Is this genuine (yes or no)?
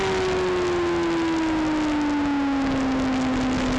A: yes